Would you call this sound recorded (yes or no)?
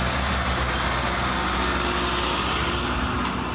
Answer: yes